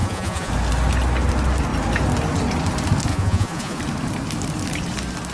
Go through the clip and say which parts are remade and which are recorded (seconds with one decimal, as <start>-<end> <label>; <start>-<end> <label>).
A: 0.0-0.5 remade; 0.5-3.1 recorded; 3.1-3.8 remade; 3.8-5.3 recorded